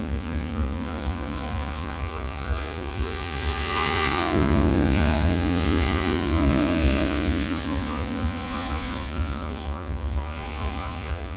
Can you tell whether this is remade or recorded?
remade